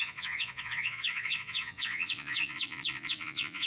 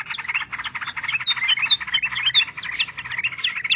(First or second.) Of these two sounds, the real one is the second